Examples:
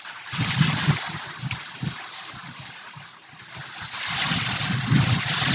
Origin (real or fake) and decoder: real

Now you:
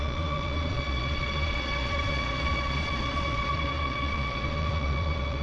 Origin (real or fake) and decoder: fake, vocoder, Vocos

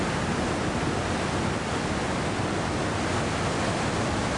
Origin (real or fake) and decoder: real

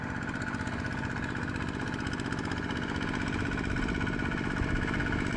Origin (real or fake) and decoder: real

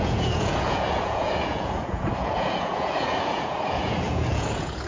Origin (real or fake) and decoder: fake, vocoder, Vocos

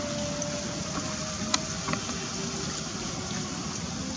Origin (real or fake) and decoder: real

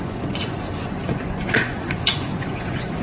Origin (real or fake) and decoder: fake, vocoder, Vocos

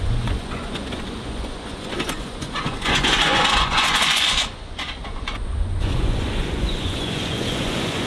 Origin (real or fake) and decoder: fake, vocoder, Vocos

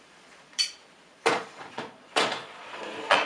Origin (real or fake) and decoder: fake, vocoder, Vocos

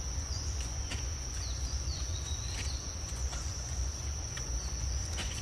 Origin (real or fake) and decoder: fake, vocoder, Vocos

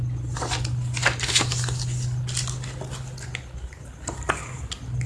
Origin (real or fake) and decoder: real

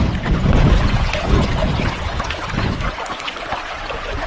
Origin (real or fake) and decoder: fake, vocoder, Vocos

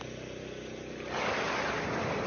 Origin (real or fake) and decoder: real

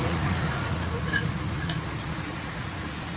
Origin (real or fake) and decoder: fake, vocoder, Vocos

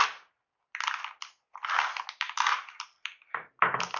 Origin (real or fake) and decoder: real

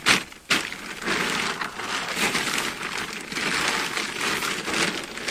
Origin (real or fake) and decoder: real